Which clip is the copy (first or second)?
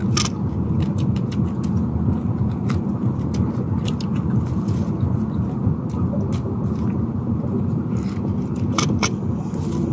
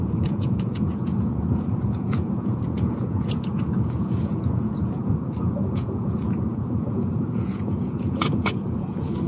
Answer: second